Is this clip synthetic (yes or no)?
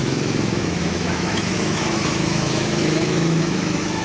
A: yes